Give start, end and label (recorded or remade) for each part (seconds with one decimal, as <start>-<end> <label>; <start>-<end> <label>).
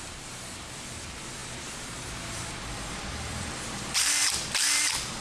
0.0-5.2 remade